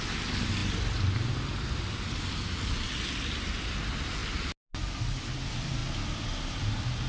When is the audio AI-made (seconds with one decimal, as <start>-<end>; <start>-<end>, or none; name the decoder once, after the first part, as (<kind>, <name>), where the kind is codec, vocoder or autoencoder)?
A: none